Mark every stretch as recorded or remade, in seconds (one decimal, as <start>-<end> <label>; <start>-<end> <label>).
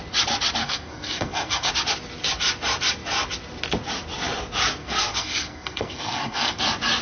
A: 0.0-0.6 recorded; 0.6-1.7 remade; 1.7-4.8 recorded; 4.8-6.6 remade; 6.6-7.0 recorded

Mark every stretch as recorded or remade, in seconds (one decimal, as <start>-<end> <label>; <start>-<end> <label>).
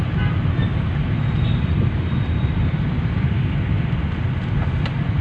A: 0.0-5.2 recorded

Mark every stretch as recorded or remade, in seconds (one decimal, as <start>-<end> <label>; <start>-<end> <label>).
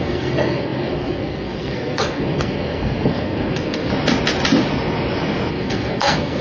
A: 0.0-3.9 remade; 3.9-5.5 recorded; 5.5-6.4 remade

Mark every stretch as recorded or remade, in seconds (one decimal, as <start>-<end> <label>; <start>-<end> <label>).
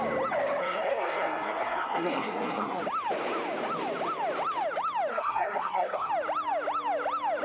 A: 0.0-0.6 recorded; 0.6-2.8 remade; 2.8-5.1 recorded; 5.1-6.1 remade; 6.1-7.4 recorded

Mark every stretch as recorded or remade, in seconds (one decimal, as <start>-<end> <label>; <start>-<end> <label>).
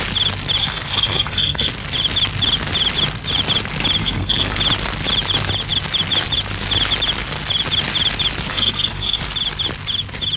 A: 0.0-0.6 recorded; 0.6-1.7 remade; 1.7-4.0 recorded; 4.0-4.6 remade; 4.6-8.5 recorded; 8.5-9.2 remade; 9.2-10.4 recorded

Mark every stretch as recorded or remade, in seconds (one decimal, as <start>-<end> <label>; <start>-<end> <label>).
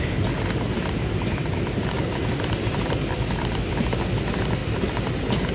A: 0.0-5.5 recorded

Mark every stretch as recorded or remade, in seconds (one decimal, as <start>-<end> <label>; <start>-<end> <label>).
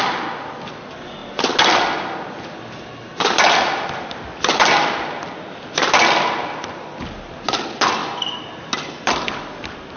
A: 0.0-10.0 recorded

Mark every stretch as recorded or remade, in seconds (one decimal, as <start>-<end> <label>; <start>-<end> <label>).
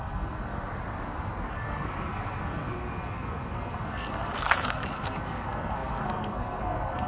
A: 0.0-0.7 remade; 0.7-1.5 recorded; 1.5-7.1 remade